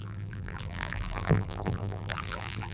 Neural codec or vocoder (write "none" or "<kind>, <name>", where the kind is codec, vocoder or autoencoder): vocoder, BigVGAN v2